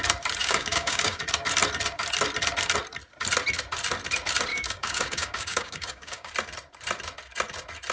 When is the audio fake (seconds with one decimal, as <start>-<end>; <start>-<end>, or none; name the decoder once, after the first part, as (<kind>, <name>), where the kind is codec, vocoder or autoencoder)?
0.4-1.2 (codec, DAC); 4.5-6.3

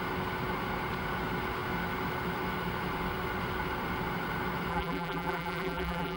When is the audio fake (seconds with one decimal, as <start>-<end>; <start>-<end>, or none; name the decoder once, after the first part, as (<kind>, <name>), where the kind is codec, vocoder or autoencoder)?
4.7-6.2 (vocoder, BigVGAN v2)

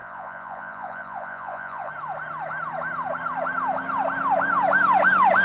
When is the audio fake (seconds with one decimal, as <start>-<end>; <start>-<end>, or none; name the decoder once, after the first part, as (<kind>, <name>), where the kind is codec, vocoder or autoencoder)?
0.0-1.9 (vocoder, Vocos)

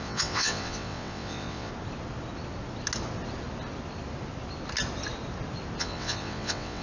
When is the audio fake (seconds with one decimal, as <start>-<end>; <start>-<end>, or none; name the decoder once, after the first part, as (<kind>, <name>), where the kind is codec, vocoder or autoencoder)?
0.0-1.7 (vocoder, WaveNeXt); 5.8-6.8

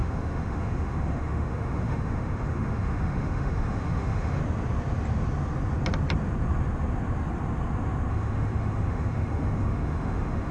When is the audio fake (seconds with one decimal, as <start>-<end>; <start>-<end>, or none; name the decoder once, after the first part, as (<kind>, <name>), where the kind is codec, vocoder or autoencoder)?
0.0-4.4 (autoencoder, DAC-VAE); 8.1-10.5

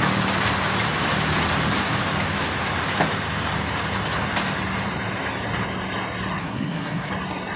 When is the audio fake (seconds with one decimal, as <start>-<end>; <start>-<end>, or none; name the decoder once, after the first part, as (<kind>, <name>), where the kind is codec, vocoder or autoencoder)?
6.4-7.1 (codec, SNAC)